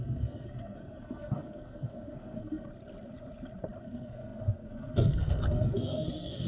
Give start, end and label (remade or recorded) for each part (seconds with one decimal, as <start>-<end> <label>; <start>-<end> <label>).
0.0-2.7 remade; 2.7-3.8 recorded; 3.8-6.5 remade